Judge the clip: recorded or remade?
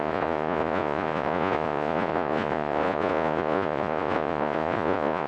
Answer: remade